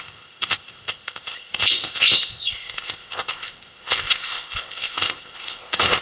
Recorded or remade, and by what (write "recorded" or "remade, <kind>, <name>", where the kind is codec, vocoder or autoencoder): remade, codec, ZipCodec